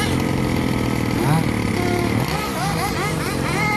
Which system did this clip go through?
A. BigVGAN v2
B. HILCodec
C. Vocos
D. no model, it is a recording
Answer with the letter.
D